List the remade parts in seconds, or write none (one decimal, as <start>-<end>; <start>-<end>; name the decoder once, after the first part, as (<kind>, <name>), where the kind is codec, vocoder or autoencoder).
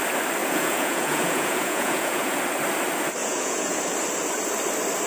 0.4-2.4 (vocoder, Vocos); 3.2-3.8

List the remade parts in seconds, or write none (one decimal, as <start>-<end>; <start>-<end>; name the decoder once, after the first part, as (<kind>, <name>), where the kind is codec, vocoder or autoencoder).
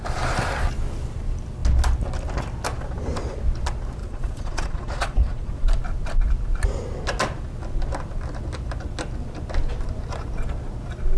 4.0-5.5 (vocoder, Vocos)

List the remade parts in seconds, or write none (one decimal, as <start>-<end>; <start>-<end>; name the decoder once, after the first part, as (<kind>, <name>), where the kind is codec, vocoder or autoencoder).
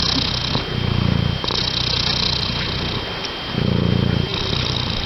4.3-5.1 (vocoder, BigVGAN v2)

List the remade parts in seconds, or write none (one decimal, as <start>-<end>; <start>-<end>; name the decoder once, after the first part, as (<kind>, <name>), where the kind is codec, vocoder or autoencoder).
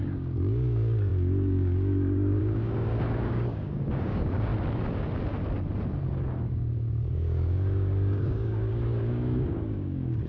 0.0-4.5 (codec, DAC); 6.5-10.3